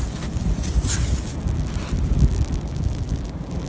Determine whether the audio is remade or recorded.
recorded